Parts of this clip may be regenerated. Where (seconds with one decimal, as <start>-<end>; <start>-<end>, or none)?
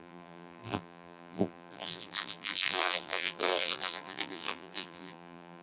0.0-5.6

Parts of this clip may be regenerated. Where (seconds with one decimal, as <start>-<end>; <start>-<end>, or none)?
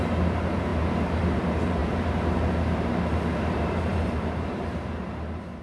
0.0-5.6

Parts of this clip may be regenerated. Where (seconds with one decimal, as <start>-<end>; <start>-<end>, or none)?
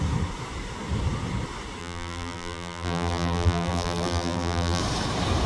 1.8-4.8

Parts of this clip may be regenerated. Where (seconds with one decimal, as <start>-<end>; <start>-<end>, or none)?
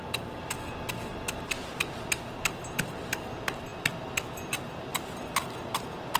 none